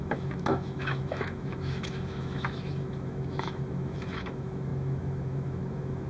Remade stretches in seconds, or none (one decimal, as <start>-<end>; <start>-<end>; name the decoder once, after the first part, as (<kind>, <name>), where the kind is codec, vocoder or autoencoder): 0.0-6.1 (autoencoder, DAC-VAE)